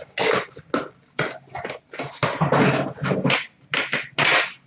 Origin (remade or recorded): recorded